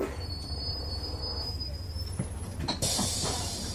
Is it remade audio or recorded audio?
remade